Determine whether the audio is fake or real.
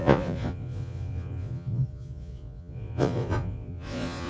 fake